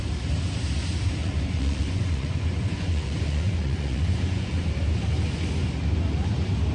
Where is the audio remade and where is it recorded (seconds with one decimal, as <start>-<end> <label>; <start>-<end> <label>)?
0.0-1.2 recorded; 1.2-4.7 remade; 4.7-6.7 recorded